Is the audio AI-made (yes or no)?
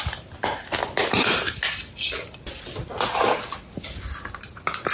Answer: no